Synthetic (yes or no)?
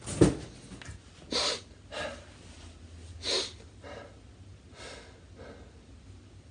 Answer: no